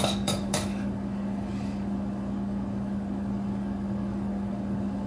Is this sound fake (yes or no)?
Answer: yes